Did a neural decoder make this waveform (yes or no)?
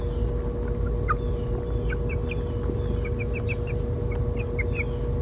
no